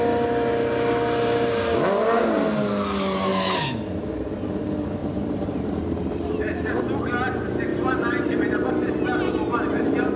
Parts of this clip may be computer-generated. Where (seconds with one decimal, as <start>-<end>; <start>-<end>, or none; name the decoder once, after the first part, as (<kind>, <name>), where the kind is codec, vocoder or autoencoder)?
5.0-6.4 (vocoder, BigVGAN v2); 7.7-8.7

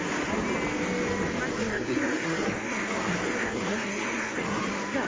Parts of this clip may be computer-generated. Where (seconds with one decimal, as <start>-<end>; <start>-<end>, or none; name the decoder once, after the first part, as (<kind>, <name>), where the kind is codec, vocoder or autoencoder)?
1.5-4.6 (codec, SNAC)

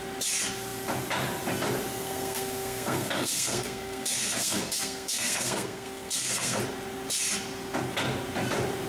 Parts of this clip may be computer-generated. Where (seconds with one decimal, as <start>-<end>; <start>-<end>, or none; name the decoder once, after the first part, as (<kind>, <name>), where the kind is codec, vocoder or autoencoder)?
1.9-6.6 (codec, SNAC)

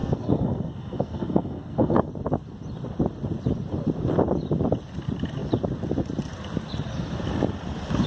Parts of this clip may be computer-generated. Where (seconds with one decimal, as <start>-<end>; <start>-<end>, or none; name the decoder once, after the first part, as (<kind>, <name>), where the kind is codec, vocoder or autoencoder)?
0.0-2.1 (codec, SNAC)

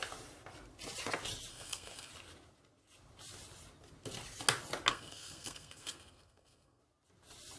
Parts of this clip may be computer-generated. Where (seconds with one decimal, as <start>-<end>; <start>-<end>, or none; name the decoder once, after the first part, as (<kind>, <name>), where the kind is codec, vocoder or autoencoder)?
1.5-2.1 (codec, SNAC); 4.9-6.8

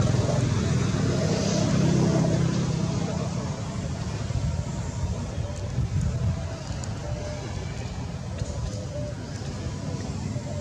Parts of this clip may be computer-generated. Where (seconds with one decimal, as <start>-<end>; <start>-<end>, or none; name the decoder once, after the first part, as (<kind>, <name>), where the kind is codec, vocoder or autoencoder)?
none

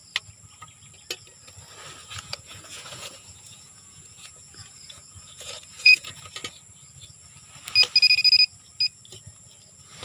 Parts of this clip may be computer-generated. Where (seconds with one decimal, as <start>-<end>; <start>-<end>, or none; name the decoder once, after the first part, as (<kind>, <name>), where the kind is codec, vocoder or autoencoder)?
2.0-6.2 (vocoder, Vocos)